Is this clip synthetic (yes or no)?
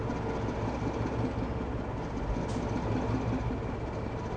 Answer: no